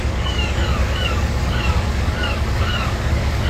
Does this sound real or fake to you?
fake